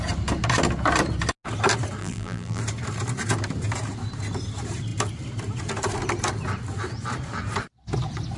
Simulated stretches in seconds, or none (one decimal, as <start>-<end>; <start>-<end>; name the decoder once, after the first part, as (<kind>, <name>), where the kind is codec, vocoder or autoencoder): 2.0-2.6 (vocoder, BigVGAN v2)